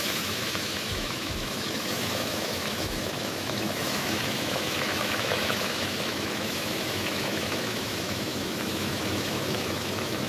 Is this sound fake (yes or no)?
yes